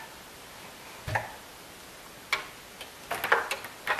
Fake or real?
real